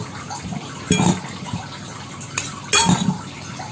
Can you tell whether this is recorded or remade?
recorded